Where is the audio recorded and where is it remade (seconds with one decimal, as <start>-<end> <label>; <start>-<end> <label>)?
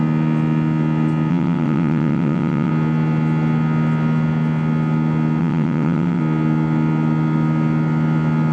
0.0-1.3 recorded; 1.3-2.7 remade; 2.7-5.4 recorded; 5.4-6.2 remade; 6.2-8.5 recorded